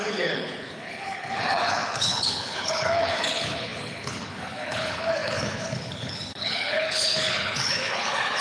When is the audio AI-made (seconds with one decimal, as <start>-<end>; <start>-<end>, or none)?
0.0-8.4

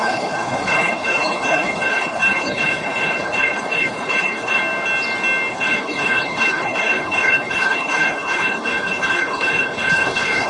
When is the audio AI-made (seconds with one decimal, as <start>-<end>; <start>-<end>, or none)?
0.0-4.6; 5.5-10.5